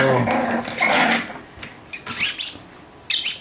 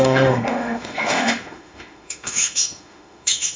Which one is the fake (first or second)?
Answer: second